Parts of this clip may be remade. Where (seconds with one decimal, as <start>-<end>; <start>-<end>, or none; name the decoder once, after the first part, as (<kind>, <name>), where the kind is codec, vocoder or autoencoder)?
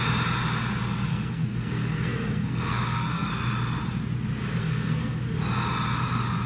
1.1-3.3 (codec, SNAC); 4.6-5.2